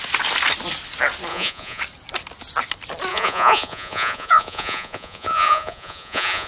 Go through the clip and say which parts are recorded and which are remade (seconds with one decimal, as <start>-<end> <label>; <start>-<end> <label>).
0.0-1.3 recorded; 1.3-1.8 remade; 1.8-3.1 recorded; 3.1-6.5 remade

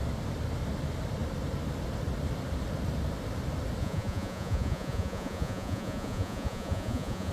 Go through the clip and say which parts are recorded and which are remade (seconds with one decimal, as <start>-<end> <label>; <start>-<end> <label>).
0.0-3.8 recorded; 3.8-7.3 remade

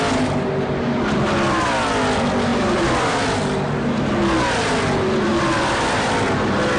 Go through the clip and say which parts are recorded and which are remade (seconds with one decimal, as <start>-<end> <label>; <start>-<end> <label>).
0.0-2.5 recorded; 2.5-3.4 remade; 3.4-5.3 recorded; 5.3-6.1 remade; 6.1-6.8 recorded

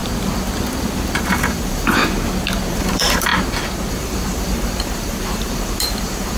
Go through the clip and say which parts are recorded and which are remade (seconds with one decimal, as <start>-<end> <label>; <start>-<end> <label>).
0.0-1.2 recorded; 1.2-2.0 remade; 2.0-2.7 recorded; 2.7-3.3 remade; 3.3-3.9 recorded; 3.9-6.4 remade

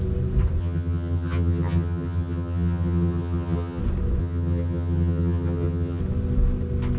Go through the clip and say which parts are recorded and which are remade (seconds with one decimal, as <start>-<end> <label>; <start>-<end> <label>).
0.0-0.6 recorded; 0.6-3.8 remade; 3.8-4.2 recorded; 4.2-6.0 remade; 6.0-7.0 recorded

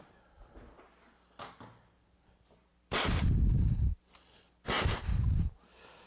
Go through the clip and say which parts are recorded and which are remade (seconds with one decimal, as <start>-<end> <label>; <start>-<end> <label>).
0.0-6.1 recorded

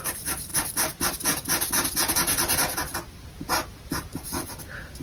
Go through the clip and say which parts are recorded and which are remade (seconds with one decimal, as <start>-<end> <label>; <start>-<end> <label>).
0.0-5.0 recorded

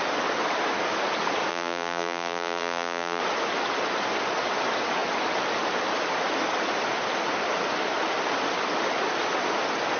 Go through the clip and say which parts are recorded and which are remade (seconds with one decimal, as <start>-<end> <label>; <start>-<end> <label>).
0.0-1.5 recorded; 1.5-3.2 remade; 3.2-10.0 recorded